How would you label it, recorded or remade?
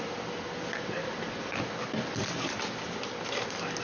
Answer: recorded